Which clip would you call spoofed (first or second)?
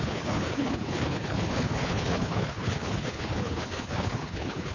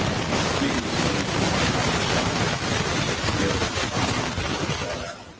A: first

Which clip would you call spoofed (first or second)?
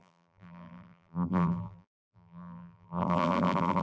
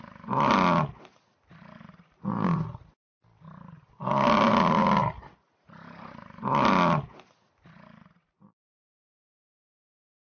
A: first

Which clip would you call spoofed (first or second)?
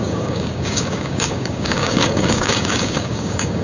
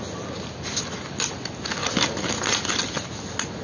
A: first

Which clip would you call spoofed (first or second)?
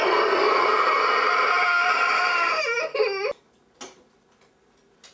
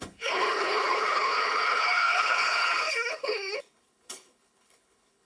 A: second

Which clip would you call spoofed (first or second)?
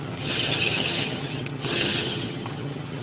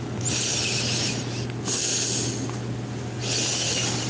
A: first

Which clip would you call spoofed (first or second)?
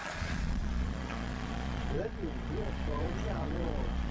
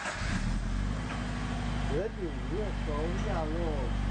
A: first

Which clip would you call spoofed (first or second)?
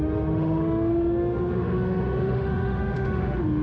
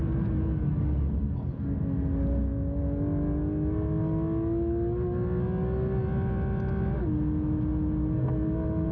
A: first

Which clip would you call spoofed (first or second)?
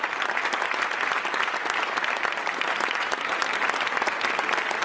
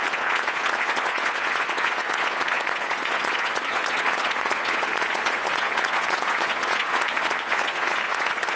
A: second